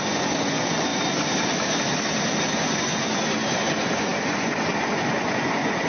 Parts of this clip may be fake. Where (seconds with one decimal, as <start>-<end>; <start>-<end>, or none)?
0.0-0.9; 2.4-5.9